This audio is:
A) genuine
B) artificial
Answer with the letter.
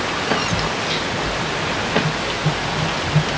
A